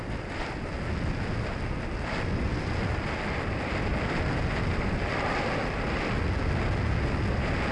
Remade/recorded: recorded